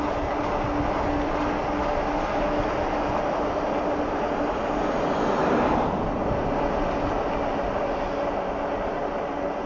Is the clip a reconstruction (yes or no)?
no